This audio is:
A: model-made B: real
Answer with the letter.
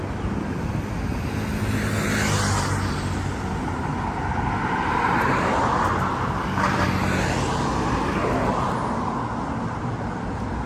B